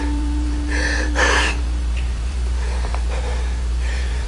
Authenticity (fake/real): fake